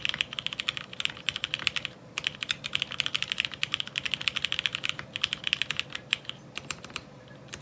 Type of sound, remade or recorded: recorded